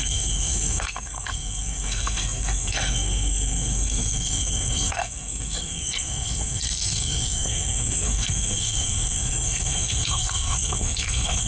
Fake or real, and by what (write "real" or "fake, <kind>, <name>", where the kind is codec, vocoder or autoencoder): fake, codec, SNAC